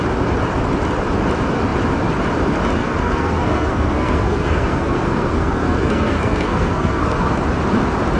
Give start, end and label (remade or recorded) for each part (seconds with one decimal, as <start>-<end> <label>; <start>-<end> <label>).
0.0-2.8 recorded; 2.8-7.4 remade; 7.4-8.2 recorded